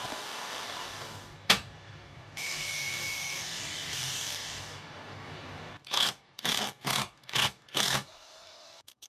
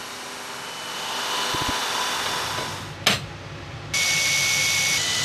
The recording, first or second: second